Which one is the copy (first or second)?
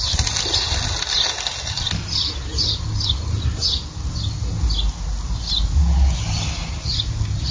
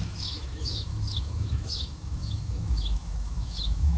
second